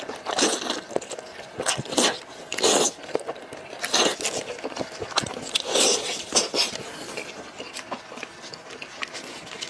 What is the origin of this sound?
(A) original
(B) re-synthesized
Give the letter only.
A